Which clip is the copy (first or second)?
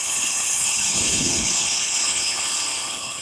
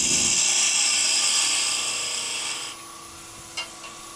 first